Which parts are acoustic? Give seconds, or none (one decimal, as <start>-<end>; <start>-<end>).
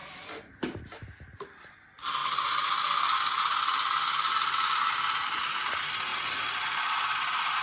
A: 0.8-7.6